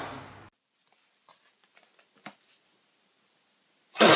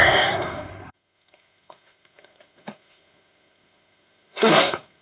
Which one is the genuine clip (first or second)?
first